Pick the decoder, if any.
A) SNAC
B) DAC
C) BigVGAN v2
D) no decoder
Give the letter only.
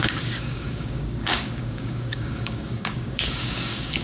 B